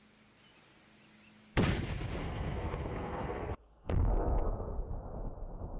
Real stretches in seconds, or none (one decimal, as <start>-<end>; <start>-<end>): 0.0-2.2; 4.9-5.8